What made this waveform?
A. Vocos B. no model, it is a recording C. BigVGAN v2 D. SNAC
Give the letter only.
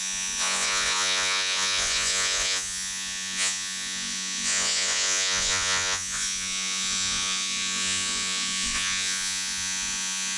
A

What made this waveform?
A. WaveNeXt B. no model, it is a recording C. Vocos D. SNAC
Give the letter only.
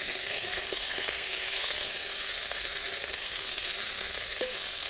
D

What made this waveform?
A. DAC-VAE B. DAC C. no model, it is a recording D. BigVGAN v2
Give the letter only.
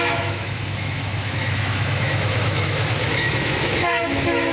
A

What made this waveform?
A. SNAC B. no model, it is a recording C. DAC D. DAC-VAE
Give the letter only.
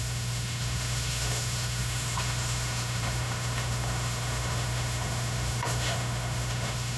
D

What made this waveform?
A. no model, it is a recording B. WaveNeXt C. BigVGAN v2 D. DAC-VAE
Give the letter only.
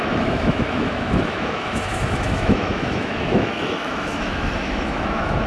D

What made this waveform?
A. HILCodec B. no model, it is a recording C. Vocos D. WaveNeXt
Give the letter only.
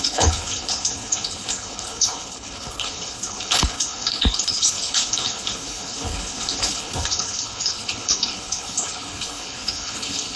A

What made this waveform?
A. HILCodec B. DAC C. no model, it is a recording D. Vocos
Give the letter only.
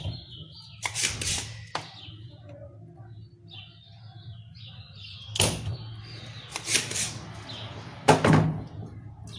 C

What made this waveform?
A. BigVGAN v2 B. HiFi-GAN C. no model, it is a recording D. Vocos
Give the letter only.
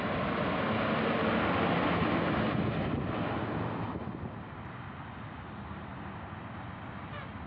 C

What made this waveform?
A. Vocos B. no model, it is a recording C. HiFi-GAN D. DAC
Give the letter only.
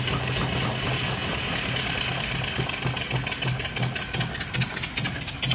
B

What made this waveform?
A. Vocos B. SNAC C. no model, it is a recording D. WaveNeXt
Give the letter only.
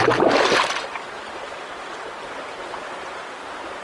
C